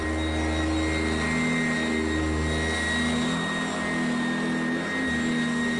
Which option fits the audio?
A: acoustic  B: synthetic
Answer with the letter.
A